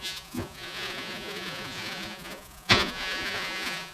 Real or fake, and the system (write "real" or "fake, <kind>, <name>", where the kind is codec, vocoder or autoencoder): fake, vocoder, Vocos